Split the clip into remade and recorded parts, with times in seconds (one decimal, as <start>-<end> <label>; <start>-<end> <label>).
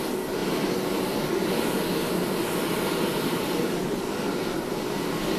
0.0-3.1 recorded; 3.1-4.4 remade; 4.4-5.4 recorded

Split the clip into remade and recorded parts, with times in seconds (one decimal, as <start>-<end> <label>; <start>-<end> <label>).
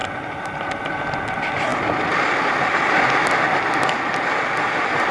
0.0-5.1 recorded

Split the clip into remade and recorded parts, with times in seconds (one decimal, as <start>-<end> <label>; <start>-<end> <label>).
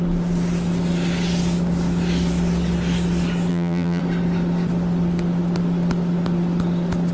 0.0-3.5 recorded; 3.5-4.0 remade; 4.0-7.1 recorded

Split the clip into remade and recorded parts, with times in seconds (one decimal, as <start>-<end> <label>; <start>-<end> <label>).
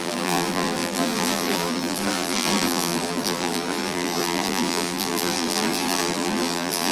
0.0-6.9 remade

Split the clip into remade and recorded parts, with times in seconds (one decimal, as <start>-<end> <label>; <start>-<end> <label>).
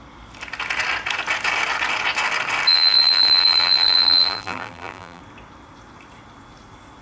0.0-2.7 recorded; 2.7-5.2 remade; 5.2-7.0 recorded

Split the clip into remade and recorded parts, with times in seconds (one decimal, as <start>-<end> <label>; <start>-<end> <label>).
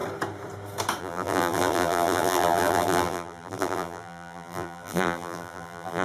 0.0-1.0 recorded; 1.0-6.0 remade